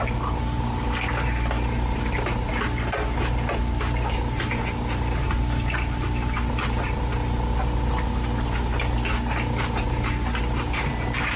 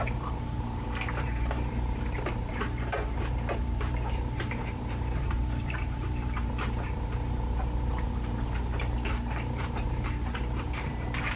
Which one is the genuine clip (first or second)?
first